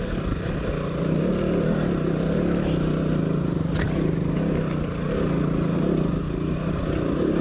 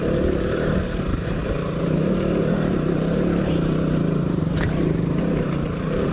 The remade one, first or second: second